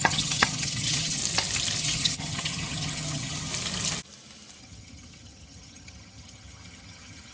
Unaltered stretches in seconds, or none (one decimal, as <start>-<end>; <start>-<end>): 1.2-1.8; 3.5-4.6